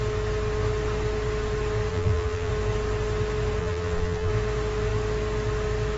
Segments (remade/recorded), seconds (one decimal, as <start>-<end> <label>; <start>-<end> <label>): 0.0-1.9 recorded; 1.9-2.5 remade; 2.5-3.6 recorded; 3.6-4.3 remade; 4.3-6.0 recorded